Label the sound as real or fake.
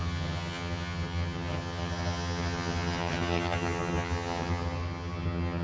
fake